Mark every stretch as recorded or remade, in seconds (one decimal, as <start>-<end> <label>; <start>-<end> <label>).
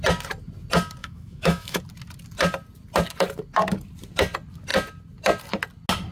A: 0.0-1.0 recorded; 1.0-1.8 remade; 1.8-6.1 recorded